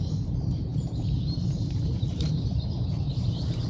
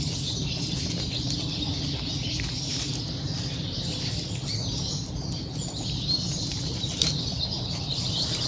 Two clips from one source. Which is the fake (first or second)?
first